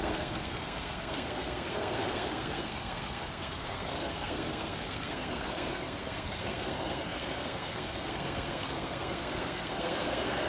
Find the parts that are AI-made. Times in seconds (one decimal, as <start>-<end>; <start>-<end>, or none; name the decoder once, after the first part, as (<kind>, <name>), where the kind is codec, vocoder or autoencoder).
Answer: 0.0-10.5 (codec, SNAC)

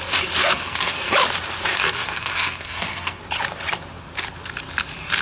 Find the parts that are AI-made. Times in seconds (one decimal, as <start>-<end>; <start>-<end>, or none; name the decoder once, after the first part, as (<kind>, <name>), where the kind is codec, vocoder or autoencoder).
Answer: 0.4-1.1 (codec, SNAC); 1.7-3.2

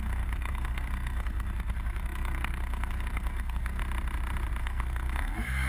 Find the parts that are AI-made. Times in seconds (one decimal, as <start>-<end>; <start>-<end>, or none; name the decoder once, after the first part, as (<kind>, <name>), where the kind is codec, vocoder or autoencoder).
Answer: 0.0-3.8 (codec, SNAC); 4.6-5.7

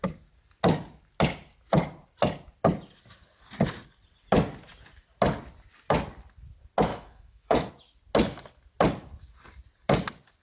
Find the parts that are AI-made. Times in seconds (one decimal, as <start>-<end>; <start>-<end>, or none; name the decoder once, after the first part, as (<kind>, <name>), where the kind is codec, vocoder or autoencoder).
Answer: 6.9-7.7 (autoencoder, DAC-VAE)

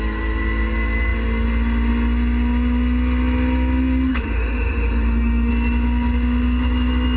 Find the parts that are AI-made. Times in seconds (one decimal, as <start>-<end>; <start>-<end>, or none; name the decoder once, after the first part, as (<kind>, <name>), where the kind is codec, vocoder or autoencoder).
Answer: 4.1-5.5 (autoencoder, DAC-VAE)

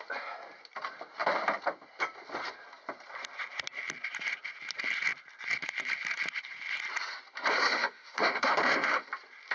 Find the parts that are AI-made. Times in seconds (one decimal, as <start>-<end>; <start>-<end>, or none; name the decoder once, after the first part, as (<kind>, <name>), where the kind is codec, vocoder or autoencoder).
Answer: 7.5-9.1 (autoencoder, DAC-VAE)